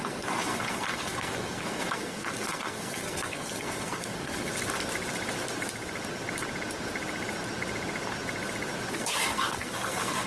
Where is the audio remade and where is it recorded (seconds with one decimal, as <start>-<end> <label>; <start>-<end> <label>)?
0.0-4.5 remade; 4.5-8.9 recorded; 8.9-10.3 remade